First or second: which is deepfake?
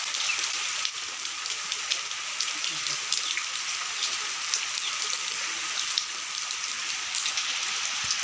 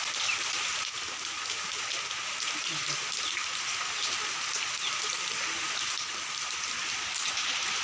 first